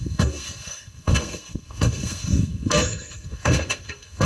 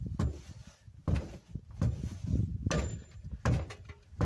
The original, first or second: second